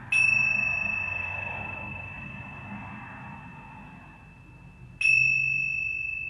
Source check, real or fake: real